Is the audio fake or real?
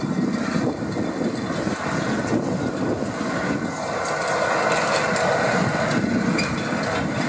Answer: real